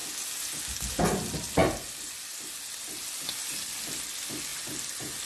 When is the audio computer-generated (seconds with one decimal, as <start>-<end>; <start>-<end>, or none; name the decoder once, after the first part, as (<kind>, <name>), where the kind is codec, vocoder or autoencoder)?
none